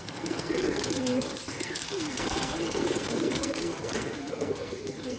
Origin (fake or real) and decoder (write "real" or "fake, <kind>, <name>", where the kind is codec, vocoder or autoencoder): fake, codec, SNAC